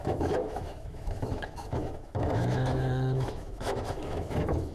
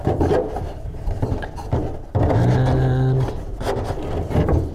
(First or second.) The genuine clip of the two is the second